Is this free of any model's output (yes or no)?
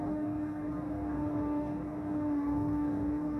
no